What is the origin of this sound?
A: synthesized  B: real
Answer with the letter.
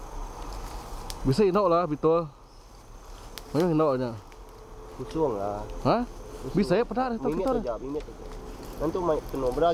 B